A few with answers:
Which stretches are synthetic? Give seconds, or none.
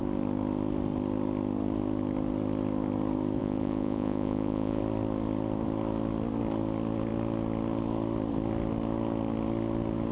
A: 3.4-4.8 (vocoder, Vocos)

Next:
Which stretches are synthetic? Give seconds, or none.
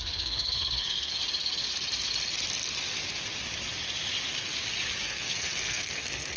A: 0.0-1.2 (codec, SNAC); 5.0-6.4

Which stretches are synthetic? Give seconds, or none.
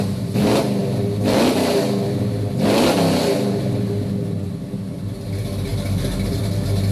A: none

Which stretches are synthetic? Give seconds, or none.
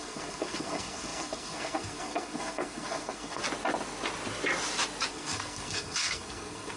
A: 0.0-3.4 (codec, SNAC); 5.1-6.8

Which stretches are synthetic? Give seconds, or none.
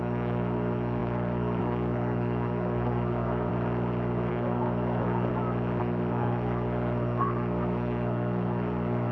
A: 0.0-3.5 (codec, SNAC); 4.3-5.3; 5.8-9.1